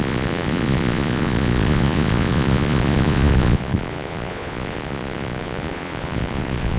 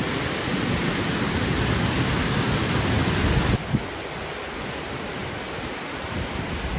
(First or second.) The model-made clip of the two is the first